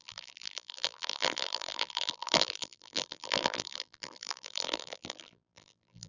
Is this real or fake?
fake